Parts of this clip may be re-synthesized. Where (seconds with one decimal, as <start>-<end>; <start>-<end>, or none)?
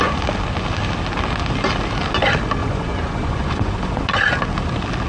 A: 2.6-4.1